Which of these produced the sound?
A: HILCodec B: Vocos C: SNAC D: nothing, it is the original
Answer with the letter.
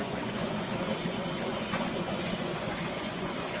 B